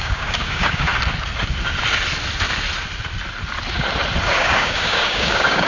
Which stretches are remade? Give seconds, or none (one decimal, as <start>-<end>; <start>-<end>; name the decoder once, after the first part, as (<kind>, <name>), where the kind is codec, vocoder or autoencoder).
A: 0.0-0.9 (codec, DAC); 4.3-5.7